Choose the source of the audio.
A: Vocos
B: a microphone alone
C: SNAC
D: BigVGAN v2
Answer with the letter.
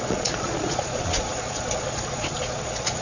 A